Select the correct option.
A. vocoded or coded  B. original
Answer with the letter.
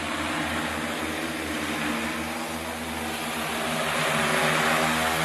B